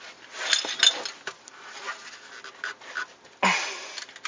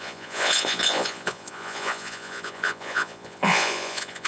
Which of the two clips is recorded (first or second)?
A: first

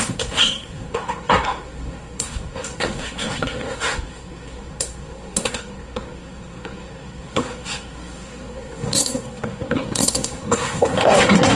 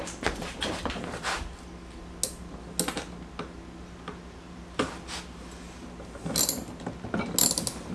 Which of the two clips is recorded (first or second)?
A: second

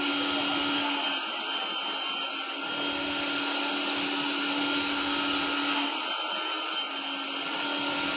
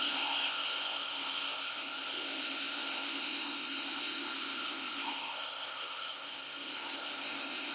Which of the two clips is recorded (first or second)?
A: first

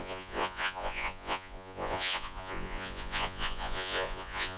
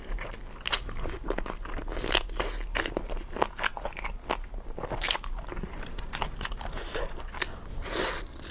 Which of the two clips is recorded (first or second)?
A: second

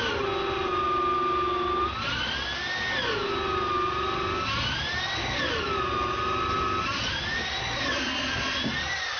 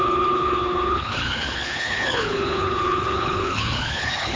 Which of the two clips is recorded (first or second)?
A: first